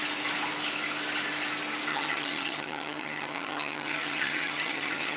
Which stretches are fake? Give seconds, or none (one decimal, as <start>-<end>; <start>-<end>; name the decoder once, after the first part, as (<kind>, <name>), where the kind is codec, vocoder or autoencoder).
1.9-5.2 (vocoder, HiFi-GAN)